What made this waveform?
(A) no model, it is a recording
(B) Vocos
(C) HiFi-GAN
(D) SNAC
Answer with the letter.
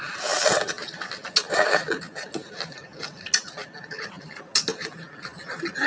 A